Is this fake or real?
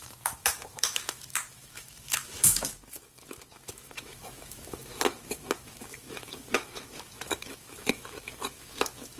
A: fake